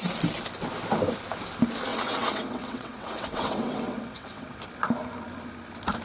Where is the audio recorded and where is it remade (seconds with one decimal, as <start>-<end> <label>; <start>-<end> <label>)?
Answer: 0.0-1.9 recorded; 1.9-4.6 remade; 4.6-6.0 recorded